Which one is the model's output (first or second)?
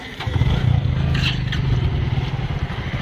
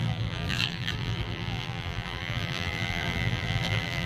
second